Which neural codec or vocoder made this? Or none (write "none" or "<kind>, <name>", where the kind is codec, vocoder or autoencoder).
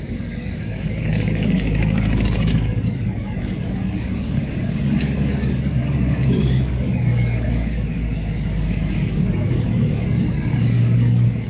codec, DAC